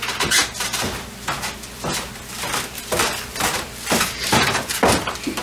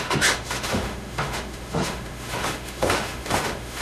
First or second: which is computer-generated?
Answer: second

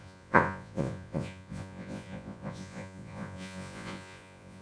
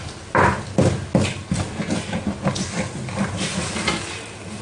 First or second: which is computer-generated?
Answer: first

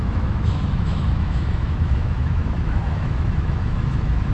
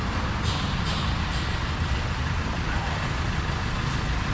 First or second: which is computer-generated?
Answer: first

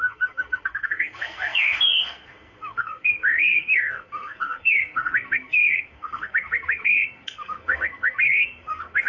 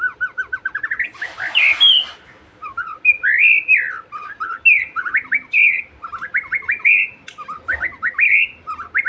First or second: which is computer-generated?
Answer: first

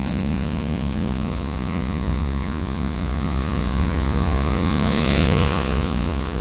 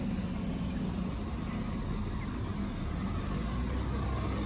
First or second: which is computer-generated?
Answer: first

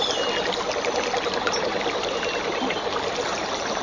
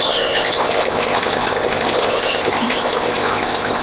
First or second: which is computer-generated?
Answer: second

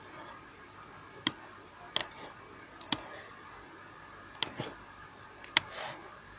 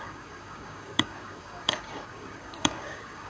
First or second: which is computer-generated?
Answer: second